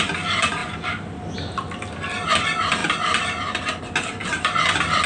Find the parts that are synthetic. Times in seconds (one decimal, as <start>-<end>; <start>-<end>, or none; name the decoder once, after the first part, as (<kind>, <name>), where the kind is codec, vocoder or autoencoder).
none